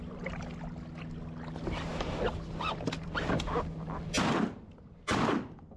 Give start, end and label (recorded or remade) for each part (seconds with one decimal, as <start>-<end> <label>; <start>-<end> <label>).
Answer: 0.0-5.8 recorded